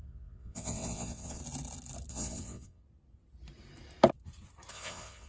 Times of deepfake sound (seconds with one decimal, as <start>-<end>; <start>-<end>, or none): 0.0-1.4; 2.1-2.8; 4.7-5.3